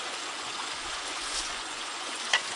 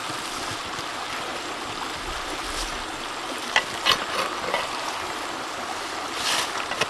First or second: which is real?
second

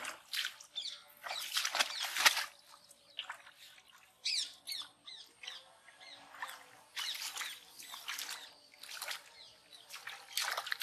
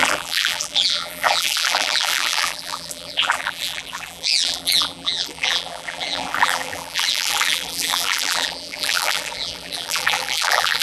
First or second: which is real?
first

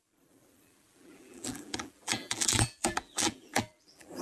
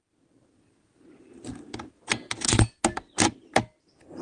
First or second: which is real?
second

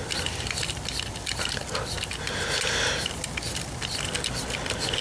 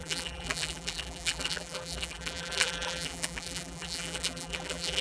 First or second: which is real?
first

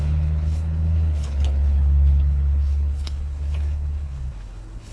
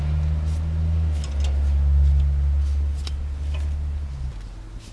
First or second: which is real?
second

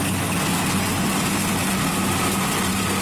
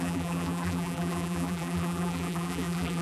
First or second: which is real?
first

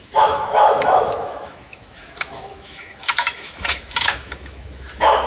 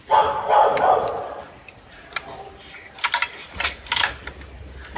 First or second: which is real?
second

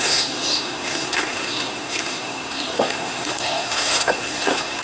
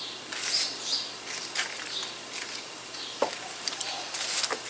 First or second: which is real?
second